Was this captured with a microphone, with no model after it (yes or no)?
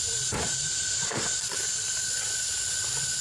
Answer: yes